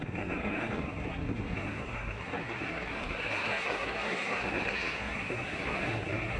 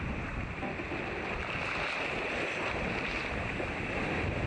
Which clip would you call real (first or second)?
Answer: second